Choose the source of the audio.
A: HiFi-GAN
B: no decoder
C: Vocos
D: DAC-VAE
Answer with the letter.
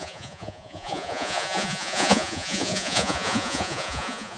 C